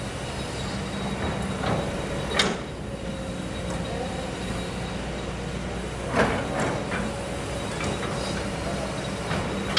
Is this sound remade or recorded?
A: recorded